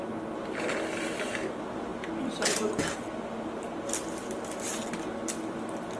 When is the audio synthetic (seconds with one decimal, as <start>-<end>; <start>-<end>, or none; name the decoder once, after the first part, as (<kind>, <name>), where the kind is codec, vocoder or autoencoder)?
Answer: none